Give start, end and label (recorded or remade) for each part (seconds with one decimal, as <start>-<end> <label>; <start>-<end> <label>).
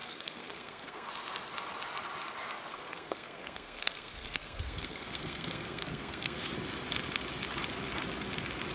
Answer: 0.0-1.1 remade; 1.1-2.7 recorded; 2.7-6.4 remade; 6.4-8.7 recorded